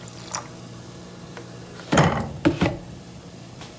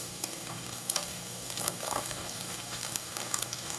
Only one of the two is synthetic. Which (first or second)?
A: second